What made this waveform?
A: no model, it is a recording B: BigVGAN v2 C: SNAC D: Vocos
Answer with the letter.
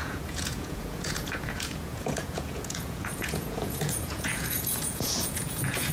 D